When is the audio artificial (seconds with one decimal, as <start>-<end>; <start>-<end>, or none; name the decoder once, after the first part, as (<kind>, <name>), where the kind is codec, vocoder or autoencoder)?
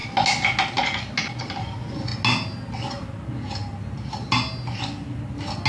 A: none